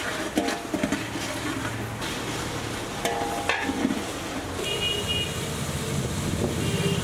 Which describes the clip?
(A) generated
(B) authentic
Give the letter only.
B